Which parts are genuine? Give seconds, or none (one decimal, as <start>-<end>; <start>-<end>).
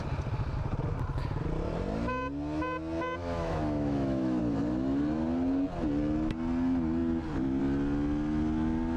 0.0-3.2; 4.4-9.0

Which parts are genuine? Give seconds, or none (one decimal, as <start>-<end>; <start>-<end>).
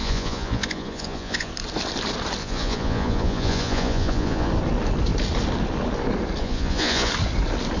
1.5-2.4; 4.5-6.4; 7.1-7.8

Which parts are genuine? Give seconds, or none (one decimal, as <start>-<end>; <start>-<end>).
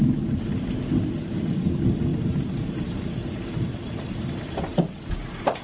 0.0-2.1; 4.1-4.7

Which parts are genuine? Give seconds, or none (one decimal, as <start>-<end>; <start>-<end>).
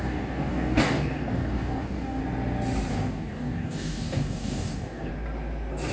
2.2-2.9; 5.1-5.9